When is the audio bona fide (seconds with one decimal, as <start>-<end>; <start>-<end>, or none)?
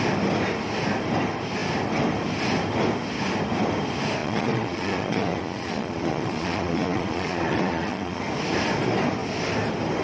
0.0-4.2; 8.2-10.0